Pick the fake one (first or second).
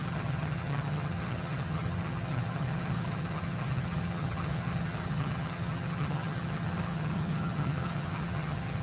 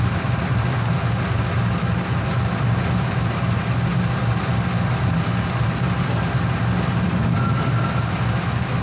first